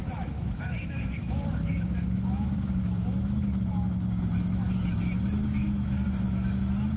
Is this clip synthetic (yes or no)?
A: yes